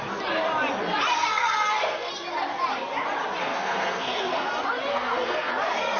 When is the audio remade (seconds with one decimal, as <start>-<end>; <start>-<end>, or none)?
1.1-2.1; 3.4-4.5; 4.9-5.5